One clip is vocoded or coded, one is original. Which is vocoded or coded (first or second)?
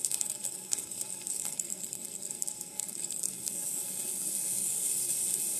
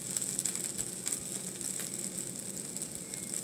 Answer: first